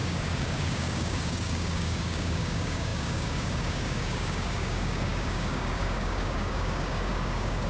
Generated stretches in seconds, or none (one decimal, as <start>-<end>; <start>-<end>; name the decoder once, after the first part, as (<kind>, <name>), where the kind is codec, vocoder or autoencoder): 0.0-7.7 (codec, DAC)